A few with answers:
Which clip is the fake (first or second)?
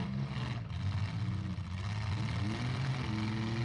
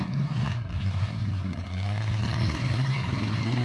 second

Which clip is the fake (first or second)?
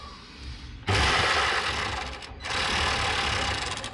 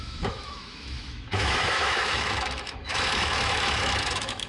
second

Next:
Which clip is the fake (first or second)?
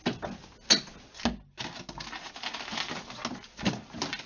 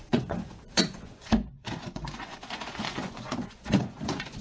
second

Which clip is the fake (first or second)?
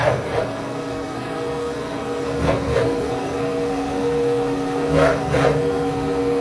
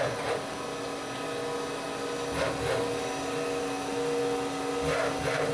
first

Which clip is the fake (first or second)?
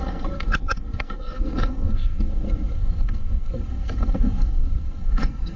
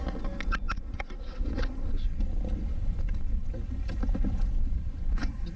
first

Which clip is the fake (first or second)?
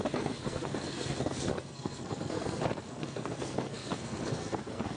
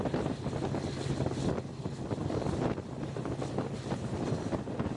first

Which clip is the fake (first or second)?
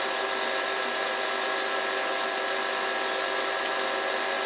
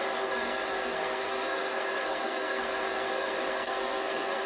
second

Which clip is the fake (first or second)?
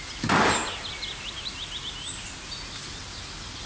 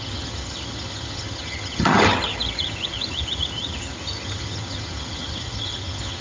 second